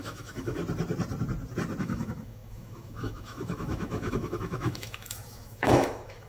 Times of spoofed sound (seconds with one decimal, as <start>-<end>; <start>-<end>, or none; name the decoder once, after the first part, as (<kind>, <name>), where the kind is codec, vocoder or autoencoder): 0.0-0.6 (autoencoder, DAC-VAE); 1.8-6.3